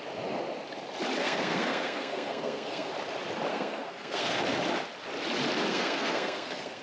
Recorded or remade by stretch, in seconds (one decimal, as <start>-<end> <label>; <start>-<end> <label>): 0.0-1.2 recorded; 1.2-2.9 remade; 2.9-3.5 recorded; 3.5-4.4 remade; 4.4-5.7 recorded; 5.7-6.8 remade